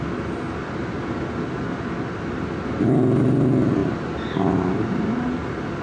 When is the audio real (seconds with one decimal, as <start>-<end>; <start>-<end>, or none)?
0.0-5.8